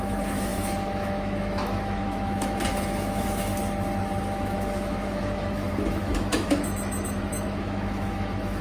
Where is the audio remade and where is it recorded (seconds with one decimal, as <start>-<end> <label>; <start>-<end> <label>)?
0.0-3.5 remade; 3.5-4.2 recorded; 4.2-8.6 remade